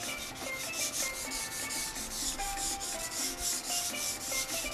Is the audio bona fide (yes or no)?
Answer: yes